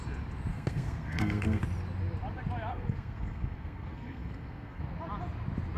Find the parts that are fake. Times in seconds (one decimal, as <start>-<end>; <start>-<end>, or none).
0.5-1.6; 2.7-4.8